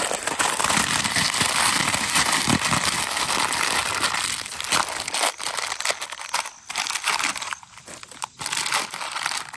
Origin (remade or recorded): recorded